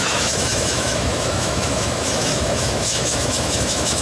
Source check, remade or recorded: remade